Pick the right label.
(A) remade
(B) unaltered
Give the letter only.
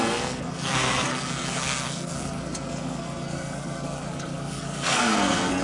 A